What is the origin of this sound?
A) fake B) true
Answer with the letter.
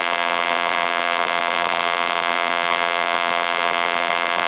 A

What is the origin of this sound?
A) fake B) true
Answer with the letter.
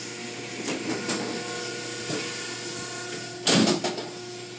B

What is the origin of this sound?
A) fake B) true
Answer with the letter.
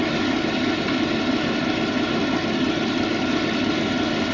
B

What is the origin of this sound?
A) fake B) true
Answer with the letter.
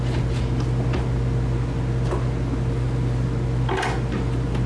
B